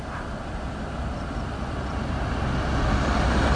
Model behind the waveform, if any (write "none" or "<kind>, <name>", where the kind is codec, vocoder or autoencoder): none